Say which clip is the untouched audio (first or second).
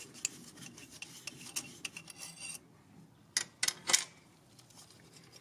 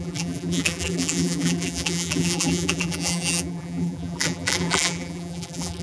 first